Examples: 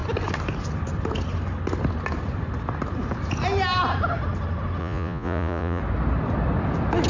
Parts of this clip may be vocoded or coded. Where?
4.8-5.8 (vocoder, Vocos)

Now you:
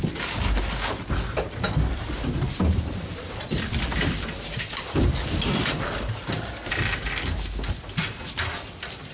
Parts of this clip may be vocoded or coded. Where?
3.1-6.2 (vocoder, BigVGAN v2)

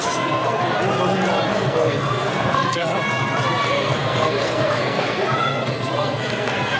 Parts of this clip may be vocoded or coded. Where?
0.0-0.6 (codec, SNAC); 1.5-2.9; 3.7-6.8

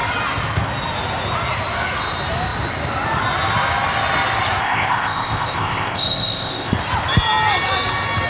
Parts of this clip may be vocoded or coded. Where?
4.6-6.8 (codec, ZipCodec)

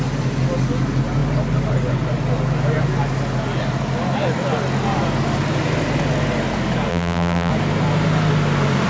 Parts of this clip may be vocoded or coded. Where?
6.9-7.5 (vocoder, BigVGAN v2)

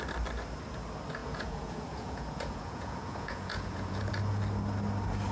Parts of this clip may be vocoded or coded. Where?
1.2-4.1 (vocoder, Vocos)